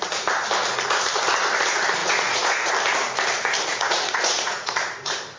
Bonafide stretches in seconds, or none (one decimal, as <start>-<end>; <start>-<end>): 0.0-2.0; 2.7-3.7; 4.7-5.4